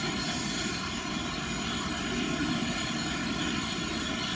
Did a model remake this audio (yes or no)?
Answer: no